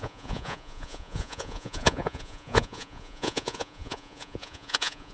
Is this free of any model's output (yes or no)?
no